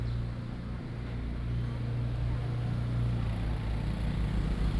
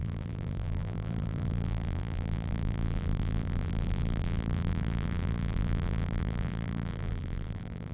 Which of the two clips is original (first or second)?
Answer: first